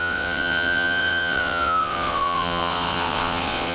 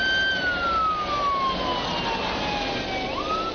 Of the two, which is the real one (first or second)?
second